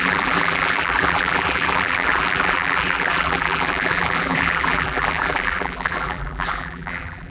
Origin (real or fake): fake